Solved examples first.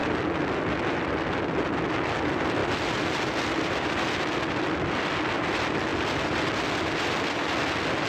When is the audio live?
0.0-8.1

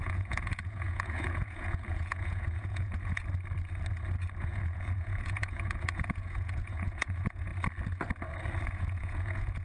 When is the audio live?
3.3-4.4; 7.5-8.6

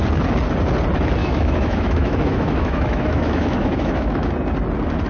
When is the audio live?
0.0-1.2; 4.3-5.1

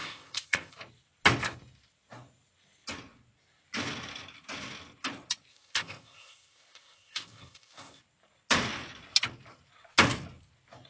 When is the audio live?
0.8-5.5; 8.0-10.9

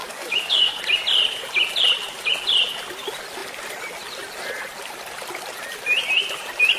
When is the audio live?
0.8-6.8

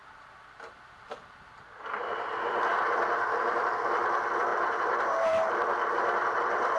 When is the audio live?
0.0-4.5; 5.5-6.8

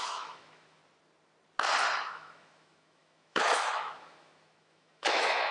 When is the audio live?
0.8-2.0

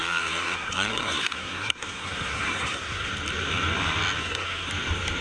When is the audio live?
3.1-4.2; 4.7-5.2